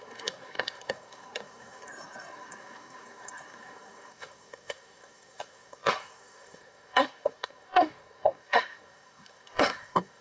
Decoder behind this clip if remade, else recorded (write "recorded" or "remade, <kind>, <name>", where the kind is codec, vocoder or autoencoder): remade, codec, SNAC